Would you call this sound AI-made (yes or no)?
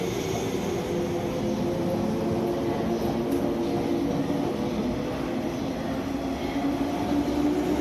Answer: no